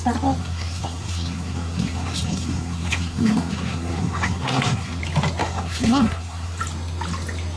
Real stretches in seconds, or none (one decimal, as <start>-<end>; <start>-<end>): 0.0-0.4; 5.0-5.4; 6.6-7.6